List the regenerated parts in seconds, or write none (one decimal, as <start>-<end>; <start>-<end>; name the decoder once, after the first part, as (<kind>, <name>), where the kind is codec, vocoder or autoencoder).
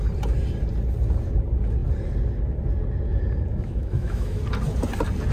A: 3.5-4.4 (autoencoder, DAC-VAE)